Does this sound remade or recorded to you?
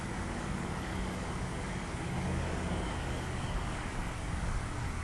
remade